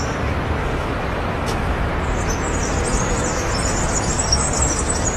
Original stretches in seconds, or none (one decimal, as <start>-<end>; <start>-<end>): 0.0-0.6; 1.9-5.2